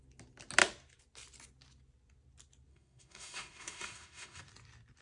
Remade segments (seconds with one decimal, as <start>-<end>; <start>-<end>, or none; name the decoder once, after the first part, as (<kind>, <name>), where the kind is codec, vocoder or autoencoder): 2.7-4.4 (autoencoder, DAC-VAE)